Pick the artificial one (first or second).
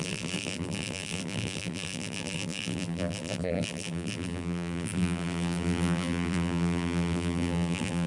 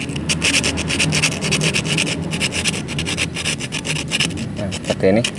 first